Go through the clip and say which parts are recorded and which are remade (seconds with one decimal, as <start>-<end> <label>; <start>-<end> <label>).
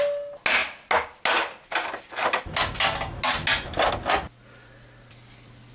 0.0-5.7 recorded